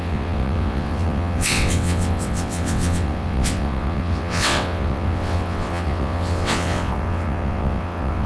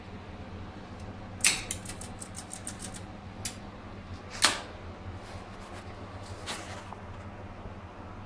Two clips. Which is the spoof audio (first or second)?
first